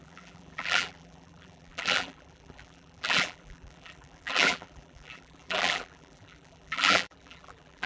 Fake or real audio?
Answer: fake